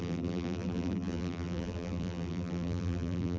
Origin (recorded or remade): remade